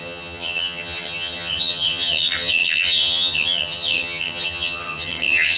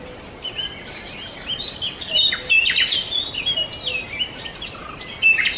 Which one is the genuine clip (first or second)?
second